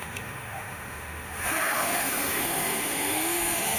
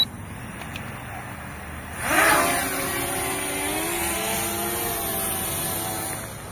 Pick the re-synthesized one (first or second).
first